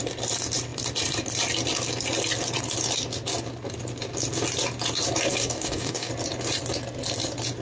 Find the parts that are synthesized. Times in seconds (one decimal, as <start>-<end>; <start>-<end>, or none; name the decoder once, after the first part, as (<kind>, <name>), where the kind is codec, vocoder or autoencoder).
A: 5.3-6.1 (codec, DAC)